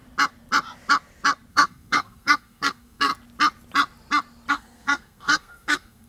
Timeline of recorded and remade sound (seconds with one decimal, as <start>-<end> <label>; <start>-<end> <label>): 0.0-1.5 recorded; 1.5-3.1 remade; 3.1-4.5 recorded; 4.5-6.1 remade